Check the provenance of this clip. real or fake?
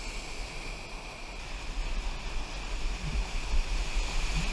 real